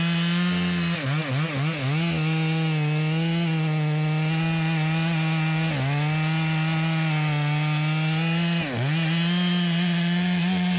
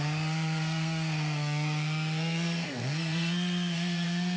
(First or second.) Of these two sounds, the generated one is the second